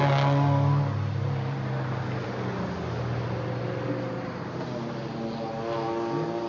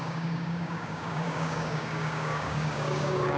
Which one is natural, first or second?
first